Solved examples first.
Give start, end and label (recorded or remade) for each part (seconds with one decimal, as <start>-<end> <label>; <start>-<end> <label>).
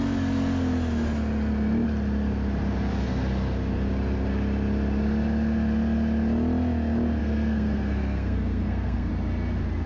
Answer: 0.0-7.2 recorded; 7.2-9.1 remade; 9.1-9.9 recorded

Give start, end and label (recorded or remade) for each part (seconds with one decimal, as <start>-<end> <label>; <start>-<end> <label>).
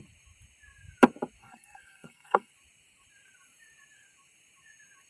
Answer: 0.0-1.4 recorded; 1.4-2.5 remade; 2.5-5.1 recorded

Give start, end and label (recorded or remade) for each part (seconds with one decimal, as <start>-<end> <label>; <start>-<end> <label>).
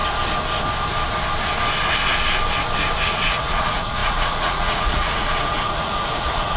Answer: 0.0-3.0 recorded; 3.0-6.6 remade